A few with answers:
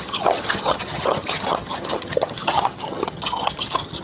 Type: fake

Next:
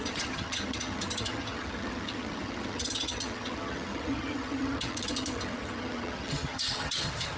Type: fake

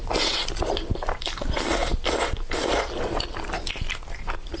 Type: real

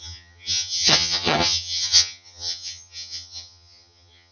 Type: fake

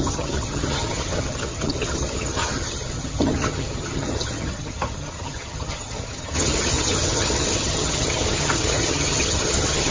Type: fake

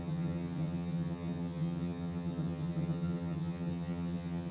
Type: fake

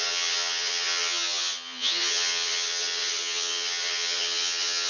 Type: fake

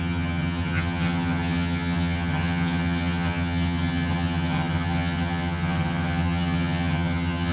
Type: fake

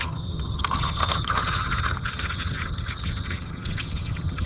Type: fake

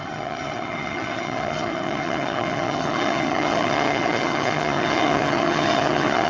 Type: fake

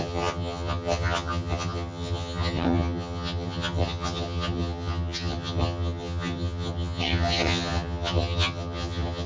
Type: fake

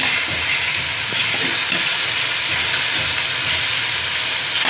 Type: real